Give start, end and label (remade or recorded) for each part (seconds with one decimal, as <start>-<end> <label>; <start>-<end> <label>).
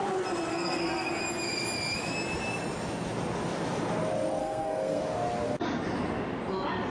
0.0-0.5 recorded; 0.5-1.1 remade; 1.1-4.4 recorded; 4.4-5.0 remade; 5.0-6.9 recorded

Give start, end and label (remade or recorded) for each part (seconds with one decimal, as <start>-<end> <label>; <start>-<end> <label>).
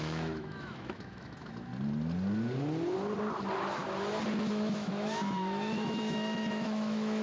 0.0-1.7 remade; 1.7-4.5 recorded; 4.5-7.2 remade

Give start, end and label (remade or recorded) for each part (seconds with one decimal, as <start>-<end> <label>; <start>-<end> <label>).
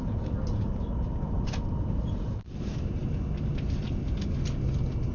0.0-5.1 recorded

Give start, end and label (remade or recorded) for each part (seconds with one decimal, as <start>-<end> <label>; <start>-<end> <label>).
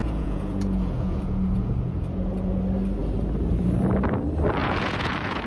0.0-2.6 remade; 2.6-4.6 recorded; 4.6-5.5 remade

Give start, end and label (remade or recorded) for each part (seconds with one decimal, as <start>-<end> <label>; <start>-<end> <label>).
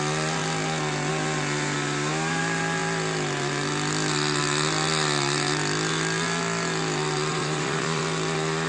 0.0-7.3 recorded; 7.3-8.0 remade; 8.0-8.7 recorded